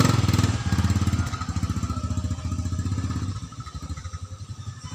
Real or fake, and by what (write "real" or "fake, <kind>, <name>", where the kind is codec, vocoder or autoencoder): real